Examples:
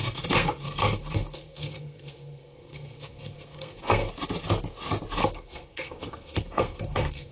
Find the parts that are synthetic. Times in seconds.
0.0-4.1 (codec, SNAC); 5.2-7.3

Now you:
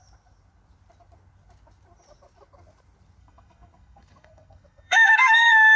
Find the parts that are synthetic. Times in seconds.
3.2-5.8 (codec, SNAC)

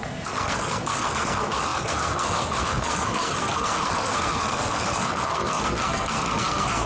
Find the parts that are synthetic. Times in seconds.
0.0-6.9 (codec, SNAC)

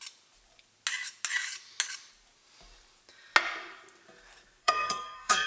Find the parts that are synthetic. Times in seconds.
4.6-5.5 (codec, SNAC)

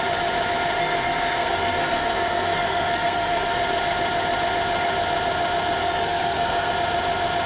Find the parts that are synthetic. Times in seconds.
0.8-3.6 (codec, SNAC); 5.8-6.7